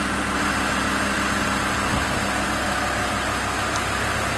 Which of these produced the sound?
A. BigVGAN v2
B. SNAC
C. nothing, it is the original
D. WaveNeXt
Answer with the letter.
C